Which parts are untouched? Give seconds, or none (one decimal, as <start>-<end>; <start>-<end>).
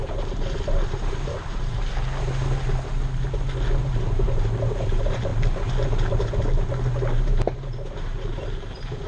1.9-3.8; 5.3-6.9